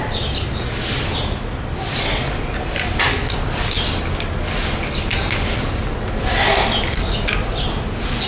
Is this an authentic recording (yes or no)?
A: yes